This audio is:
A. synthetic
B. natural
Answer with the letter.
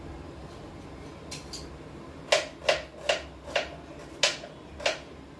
B